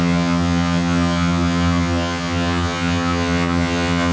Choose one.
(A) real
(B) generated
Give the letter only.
B